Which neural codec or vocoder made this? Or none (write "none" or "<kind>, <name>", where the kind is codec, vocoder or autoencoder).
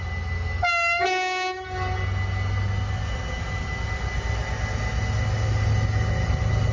none